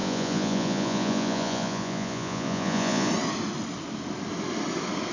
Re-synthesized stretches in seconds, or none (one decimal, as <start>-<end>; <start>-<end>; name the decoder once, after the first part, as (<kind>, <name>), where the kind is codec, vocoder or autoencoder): 0.0-3.1 (vocoder, Vocos)